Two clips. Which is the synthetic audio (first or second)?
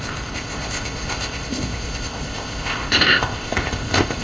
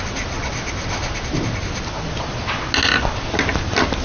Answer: first